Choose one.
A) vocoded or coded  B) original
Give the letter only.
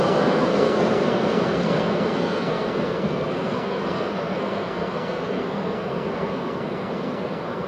A